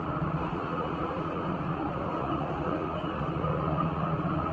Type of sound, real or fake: fake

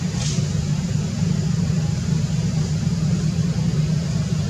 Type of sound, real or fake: real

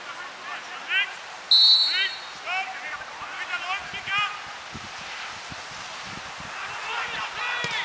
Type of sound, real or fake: real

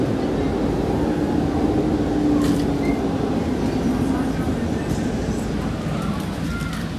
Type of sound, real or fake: real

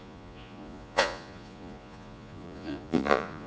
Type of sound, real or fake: fake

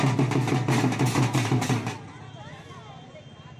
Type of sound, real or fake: real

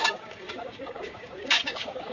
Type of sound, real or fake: fake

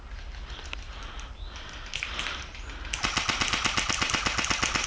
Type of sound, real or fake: real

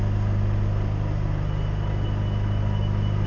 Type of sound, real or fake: real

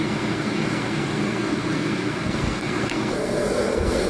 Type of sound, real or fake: fake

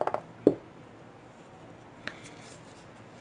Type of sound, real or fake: real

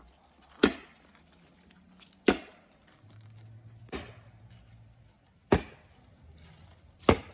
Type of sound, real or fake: real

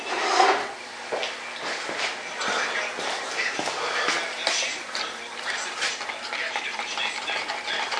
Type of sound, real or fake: real